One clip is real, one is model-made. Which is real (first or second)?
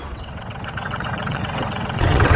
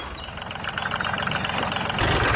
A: second